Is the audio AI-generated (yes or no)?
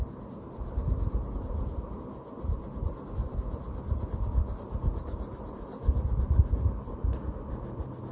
no